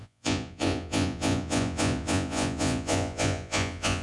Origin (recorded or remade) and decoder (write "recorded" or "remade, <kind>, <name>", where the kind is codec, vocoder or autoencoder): remade, vocoder, Vocos